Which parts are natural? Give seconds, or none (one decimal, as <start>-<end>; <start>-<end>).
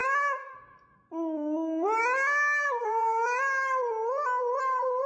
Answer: 0.0-2.8; 3.2-4.6